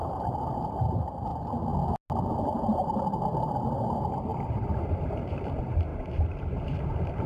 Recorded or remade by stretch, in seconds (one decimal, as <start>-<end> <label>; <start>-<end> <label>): 0.0-1.3 remade; 1.3-2.2 recorded; 2.2-7.3 remade